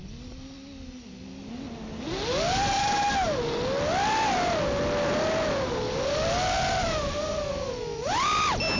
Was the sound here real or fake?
real